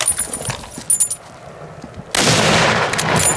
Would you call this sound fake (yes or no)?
no